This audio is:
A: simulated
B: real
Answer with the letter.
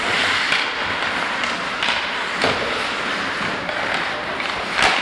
B